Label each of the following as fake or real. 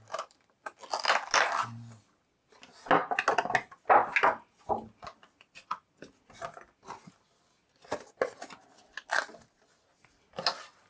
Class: real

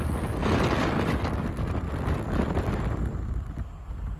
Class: real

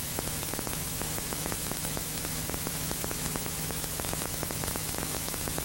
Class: fake